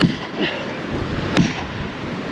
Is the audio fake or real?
real